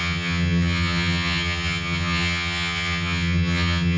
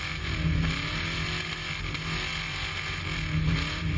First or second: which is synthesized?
first